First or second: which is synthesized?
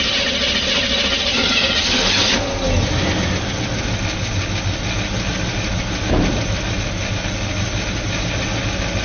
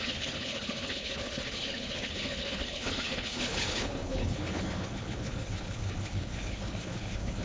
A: second